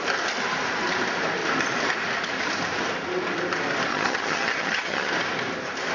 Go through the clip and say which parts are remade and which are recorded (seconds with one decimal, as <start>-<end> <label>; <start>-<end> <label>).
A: 0.0-3.9 recorded; 3.9-5.1 remade; 5.1-5.9 recorded